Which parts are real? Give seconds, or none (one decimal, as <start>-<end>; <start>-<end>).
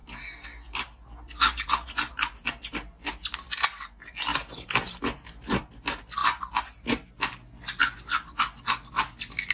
0.0-9.5